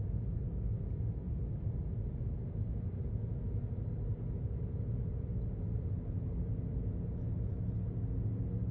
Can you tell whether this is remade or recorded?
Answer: recorded